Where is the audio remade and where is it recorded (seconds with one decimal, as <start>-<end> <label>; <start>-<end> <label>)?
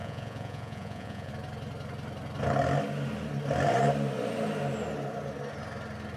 0.0-1.3 remade; 1.3-6.2 recorded